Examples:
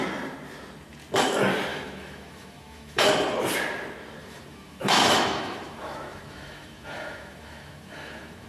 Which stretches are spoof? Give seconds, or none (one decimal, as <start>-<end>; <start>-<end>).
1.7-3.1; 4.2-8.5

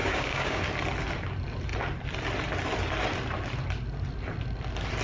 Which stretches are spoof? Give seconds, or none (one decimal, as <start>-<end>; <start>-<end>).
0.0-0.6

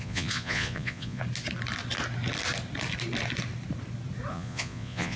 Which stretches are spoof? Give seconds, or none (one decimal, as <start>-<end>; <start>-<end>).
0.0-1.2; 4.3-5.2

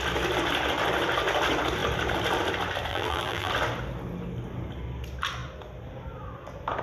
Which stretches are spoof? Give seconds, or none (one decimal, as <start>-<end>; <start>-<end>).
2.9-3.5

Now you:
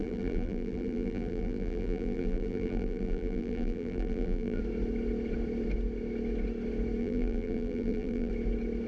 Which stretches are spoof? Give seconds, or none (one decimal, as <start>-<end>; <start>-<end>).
0.0-4.6; 7.0-8.3